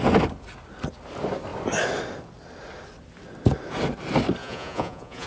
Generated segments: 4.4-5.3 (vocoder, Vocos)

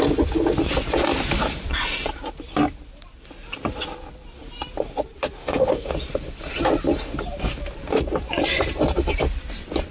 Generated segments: 5.4-5.9 (autoencoder, DAC-VAE)

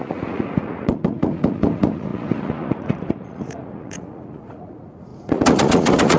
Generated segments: 0.0-6.2 (vocoder, Vocos)

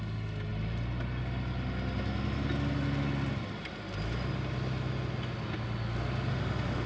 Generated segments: 6.3-6.9 (autoencoder, DAC-VAE)